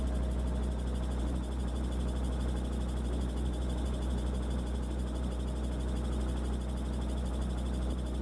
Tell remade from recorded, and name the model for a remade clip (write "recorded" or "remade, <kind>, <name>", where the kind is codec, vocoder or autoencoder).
recorded